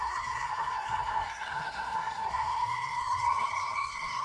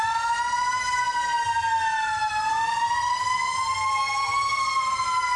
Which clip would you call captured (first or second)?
second